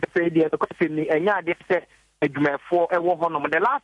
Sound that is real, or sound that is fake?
real